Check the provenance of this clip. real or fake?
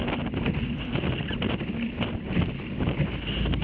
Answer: real